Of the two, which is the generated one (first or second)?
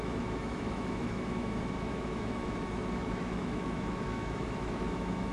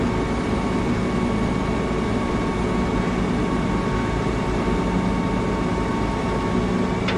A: first